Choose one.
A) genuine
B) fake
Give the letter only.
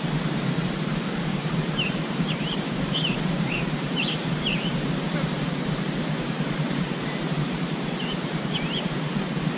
B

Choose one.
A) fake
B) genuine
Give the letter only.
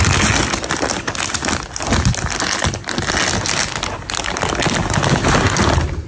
B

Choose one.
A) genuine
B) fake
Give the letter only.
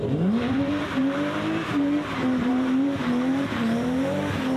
B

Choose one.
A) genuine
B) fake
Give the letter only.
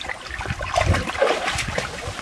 B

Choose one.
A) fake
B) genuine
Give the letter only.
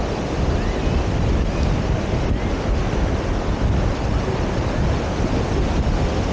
B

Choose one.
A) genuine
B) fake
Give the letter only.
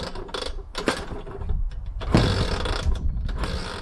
A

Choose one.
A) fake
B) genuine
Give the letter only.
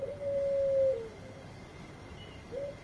B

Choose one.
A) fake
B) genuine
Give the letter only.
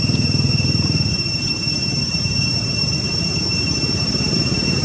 A